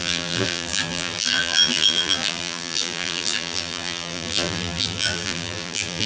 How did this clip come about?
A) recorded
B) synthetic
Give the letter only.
B